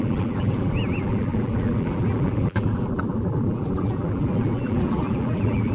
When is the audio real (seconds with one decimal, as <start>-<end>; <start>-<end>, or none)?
none